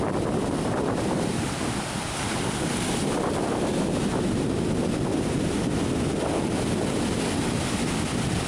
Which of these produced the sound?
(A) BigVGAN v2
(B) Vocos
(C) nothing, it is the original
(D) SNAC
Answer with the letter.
C